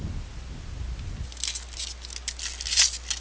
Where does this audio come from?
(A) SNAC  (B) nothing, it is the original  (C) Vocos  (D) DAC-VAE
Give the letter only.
B